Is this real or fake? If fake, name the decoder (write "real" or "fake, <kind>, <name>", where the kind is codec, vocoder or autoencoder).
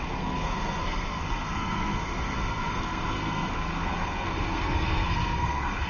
fake, codec, SNAC